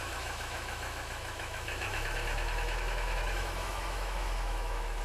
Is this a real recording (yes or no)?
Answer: no